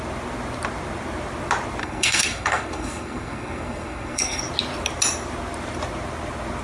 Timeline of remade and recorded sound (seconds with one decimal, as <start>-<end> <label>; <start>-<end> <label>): 0.0-1.8 recorded; 1.8-4.4 remade; 4.4-6.6 recorded

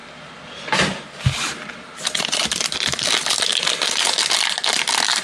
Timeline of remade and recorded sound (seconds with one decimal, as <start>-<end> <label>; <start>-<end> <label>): 0.0-3.1 remade; 3.1-5.2 recorded